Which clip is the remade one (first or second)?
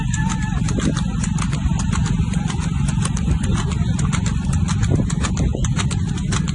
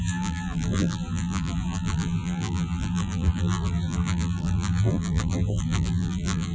second